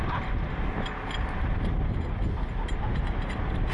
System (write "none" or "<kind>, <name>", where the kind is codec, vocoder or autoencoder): none